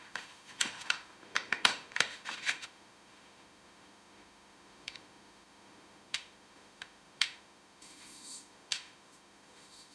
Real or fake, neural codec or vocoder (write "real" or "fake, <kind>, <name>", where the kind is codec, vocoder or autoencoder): fake, autoencoder, DAC-VAE